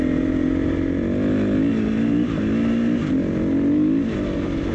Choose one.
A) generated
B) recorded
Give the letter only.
B